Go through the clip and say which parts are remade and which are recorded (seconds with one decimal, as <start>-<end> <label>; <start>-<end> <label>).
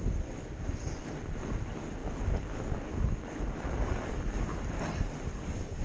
0.0-5.8 recorded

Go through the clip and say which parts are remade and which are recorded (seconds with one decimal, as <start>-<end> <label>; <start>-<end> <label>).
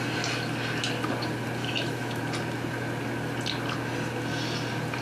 0.0-1.6 recorded; 1.6-2.2 remade; 2.2-5.0 recorded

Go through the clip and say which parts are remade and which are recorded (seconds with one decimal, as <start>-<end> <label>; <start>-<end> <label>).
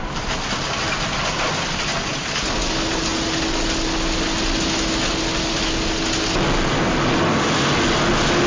0.0-8.5 recorded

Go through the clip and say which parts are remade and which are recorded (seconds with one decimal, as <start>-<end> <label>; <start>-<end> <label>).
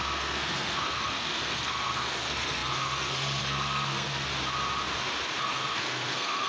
0.0-4.3 remade; 4.3-5.4 recorded; 5.4-6.5 remade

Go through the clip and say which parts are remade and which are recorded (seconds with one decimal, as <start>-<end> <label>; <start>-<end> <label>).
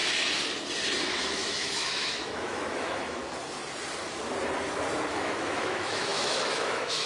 0.0-1.1 recorded; 1.1-3.2 remade; 3.2-5.1 recorded; 5.1-7.1 remade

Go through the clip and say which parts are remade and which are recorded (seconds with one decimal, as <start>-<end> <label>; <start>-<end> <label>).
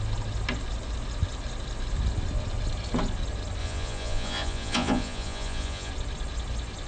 0.0-3.6 recorded; 3.6-5.9 remade; 5.9-6.9 recorded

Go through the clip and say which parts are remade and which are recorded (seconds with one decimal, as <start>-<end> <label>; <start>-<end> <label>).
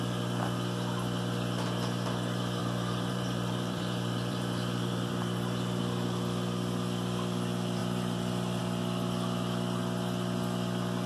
0.0-2.6 recorded; 2.6-5.8 remade; 5.8-7.8 recorded; 7.8-8.6 remade; 8.6-11.1 recorded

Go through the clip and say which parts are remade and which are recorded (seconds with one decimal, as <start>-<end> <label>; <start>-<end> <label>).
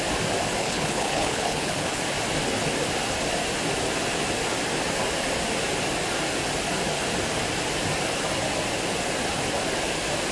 0.0-0.6 recorded; 0.6-2.0 remade; 2.0-10.3 recorded